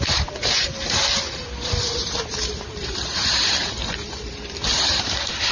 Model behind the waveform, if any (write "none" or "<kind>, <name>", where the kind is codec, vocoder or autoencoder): vocoder, BigVGAN v2